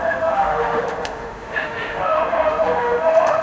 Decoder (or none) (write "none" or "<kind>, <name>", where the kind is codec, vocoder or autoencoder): autoencoder, DAC-VAE